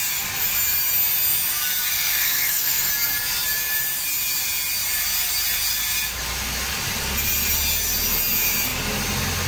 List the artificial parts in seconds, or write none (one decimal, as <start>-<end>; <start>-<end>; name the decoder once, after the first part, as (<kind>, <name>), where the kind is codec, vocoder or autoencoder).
1.9-2.9 (codec, SNAC)